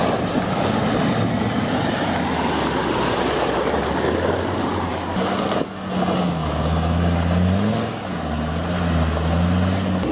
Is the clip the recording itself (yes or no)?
yes